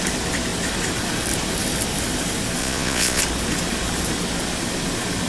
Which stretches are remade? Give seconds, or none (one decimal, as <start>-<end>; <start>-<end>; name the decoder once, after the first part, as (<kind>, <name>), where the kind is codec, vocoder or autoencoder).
2.6-3.2 (vocoder, Vocos)